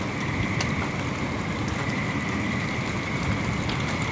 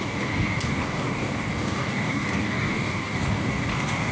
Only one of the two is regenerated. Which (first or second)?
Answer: second